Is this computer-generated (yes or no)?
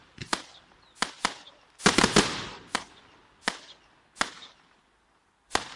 no